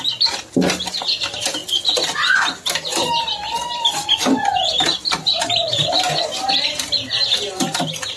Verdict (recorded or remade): recorded